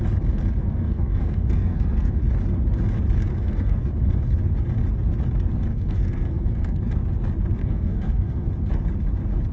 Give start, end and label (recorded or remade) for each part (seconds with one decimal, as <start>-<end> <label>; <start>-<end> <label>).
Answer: 0.0-0.6 recorded; 0.6-2.2 remade; 2.2-3.3 recorded; 3.3-3.9 remade; 3.9-5.7 recorded; 5.7-6.9 remade; 6.9-7.6 recorded; 7.6-8.5 remade; 8.5-9.5 recorded